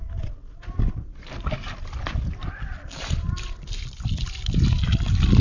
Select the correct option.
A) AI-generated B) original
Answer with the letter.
B